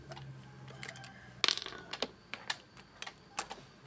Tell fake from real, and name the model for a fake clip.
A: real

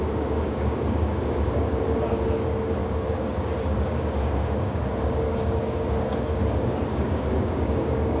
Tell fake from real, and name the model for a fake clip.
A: fake, codec, DAC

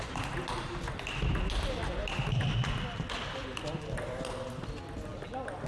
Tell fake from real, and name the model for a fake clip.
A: real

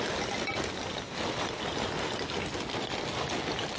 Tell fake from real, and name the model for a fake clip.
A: real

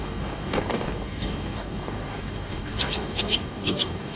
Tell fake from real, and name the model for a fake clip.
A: fake, codec, DAC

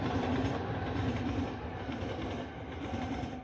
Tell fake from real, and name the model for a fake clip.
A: real